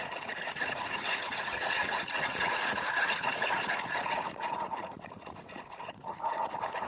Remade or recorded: remade